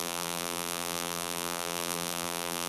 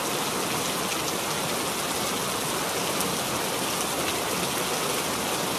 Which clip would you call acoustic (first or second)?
second